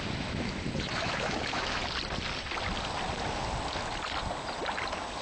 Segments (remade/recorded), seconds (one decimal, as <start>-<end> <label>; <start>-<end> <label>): 0.0-1.8 remade; 1.8-5.2 recorded